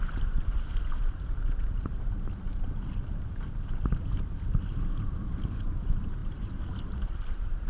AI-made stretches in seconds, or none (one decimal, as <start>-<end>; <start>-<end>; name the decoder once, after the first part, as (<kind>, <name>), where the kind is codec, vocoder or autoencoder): 0.0-2.5 (vocoder, BigVGAN v2); 3.3-7.7